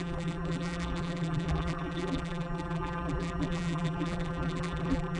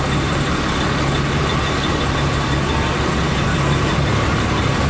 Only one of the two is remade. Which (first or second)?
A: first